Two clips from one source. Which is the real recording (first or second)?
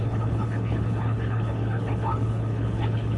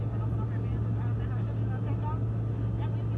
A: second